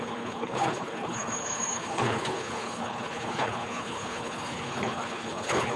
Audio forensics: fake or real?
fake